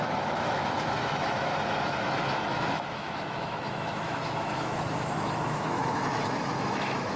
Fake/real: fake